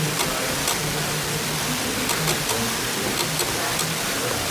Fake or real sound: fake